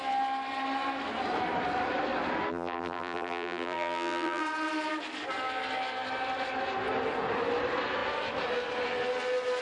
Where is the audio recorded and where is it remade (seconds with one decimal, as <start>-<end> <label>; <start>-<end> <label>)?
0.0-2.5 recorded; 2.5-4.4 remade; 4.4-9.6 recorded